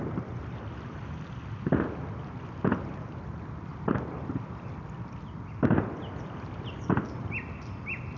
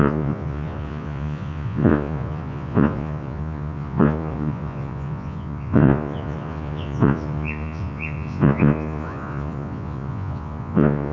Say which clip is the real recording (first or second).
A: first